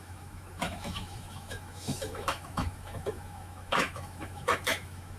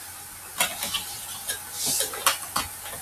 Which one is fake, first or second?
first